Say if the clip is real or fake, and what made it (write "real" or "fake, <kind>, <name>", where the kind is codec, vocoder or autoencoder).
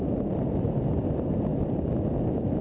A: real